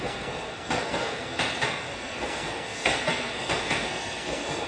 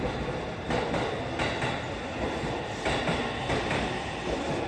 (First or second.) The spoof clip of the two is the first